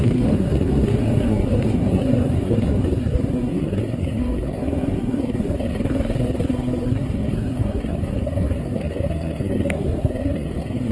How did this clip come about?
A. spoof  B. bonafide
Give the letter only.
A